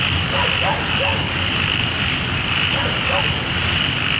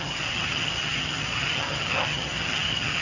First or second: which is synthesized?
second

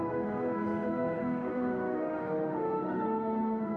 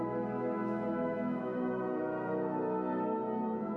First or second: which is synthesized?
first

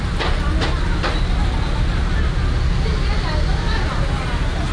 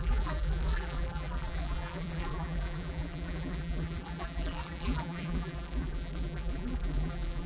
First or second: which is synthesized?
second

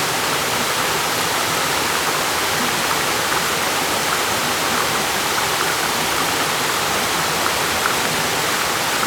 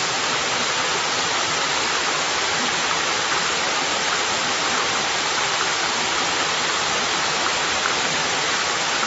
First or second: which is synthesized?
second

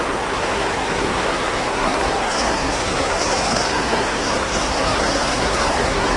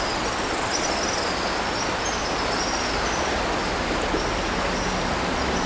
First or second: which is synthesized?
first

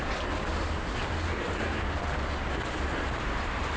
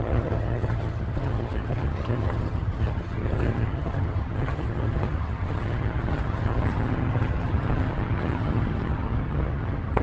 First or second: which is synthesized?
second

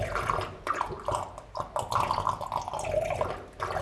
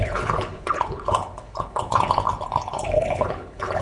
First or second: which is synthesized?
second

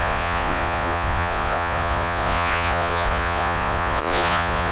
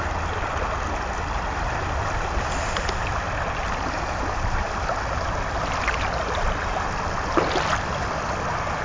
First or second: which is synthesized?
first